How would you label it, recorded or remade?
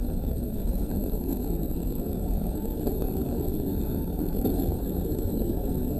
remade